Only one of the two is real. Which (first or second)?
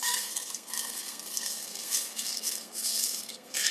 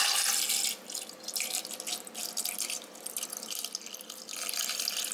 second